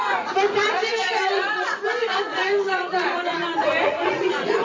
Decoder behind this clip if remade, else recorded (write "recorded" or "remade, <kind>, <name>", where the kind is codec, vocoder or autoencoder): remade, vocoder, Vocos